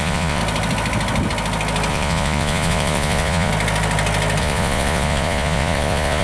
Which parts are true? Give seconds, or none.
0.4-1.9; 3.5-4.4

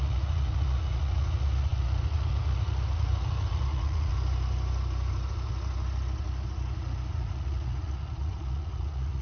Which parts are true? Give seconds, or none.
4.1-7.1